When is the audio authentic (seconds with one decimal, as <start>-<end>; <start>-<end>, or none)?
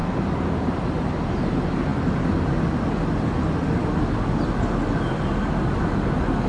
0.0-6.5